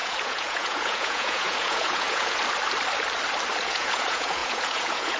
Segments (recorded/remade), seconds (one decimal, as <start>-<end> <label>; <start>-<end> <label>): 0.0-2.4 remade; 2.4-3.6 recorded; 3.6-5.2 remade